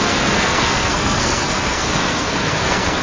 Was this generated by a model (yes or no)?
yes